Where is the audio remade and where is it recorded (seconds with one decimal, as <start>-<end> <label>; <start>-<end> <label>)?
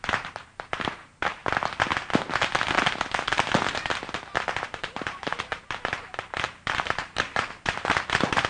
0.0-1.4 remade; 1.4-4.7 recorded; 4.7-8.5 remade